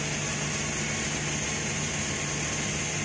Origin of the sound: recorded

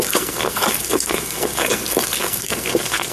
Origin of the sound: remade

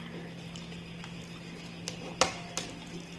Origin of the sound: recorded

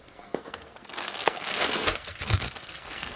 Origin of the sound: remade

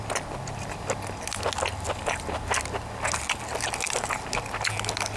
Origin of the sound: recorded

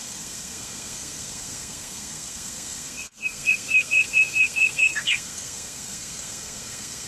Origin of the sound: remade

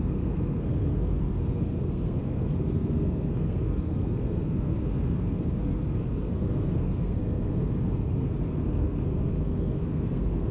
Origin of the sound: remade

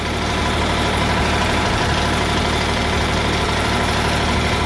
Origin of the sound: recorded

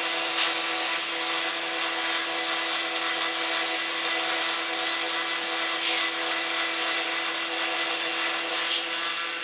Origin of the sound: recorded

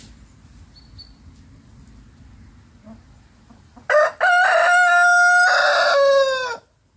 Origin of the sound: recorded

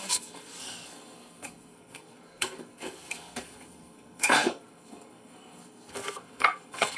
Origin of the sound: remade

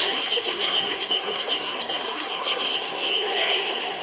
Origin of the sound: remade